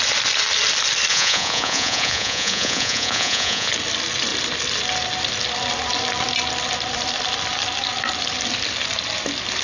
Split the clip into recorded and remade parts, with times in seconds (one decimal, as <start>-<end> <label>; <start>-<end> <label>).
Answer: 0.0-1.1 recorded; 1.1-3.7 remade; 3.7-9.6 recorded